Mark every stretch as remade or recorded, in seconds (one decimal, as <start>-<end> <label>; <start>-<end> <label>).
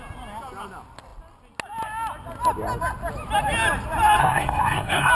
0.0-4.2 recorded; 4.2-5.1 remade